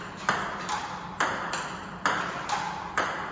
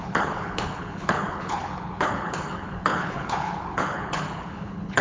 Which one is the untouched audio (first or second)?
first